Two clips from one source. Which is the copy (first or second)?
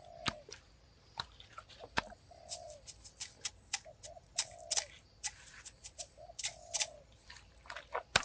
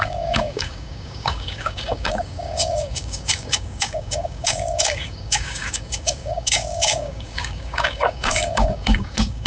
second